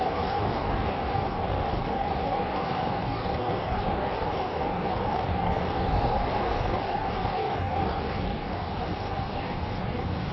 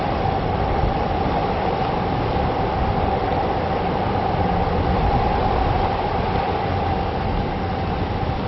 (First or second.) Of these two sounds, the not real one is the first